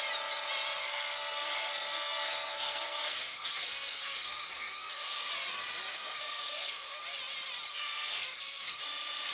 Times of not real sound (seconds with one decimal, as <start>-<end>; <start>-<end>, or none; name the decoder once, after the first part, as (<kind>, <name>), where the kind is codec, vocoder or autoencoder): 0.8-5.3 (codec, SNAC); 5.9-7.0; 7.7-8.8